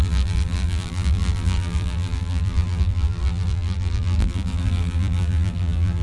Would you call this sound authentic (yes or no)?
no